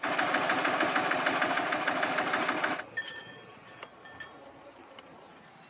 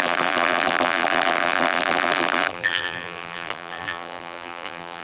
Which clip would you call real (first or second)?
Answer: first